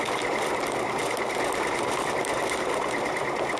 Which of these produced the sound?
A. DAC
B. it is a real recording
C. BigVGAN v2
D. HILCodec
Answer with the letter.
B